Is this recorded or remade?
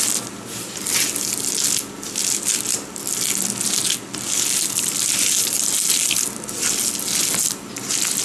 recorded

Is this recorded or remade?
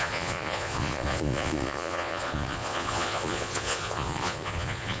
remade